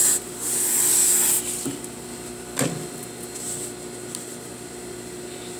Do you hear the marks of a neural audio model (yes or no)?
no